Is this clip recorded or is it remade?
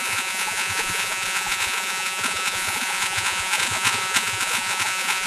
remade